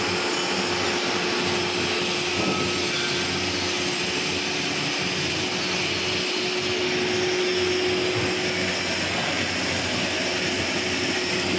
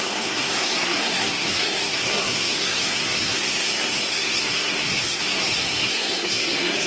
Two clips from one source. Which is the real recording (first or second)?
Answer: first